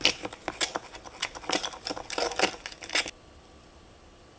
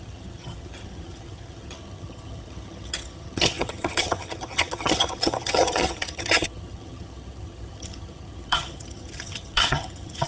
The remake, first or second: second